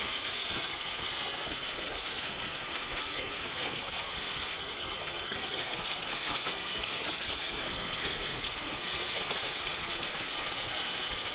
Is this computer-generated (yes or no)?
yes